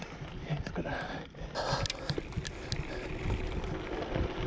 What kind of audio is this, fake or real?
real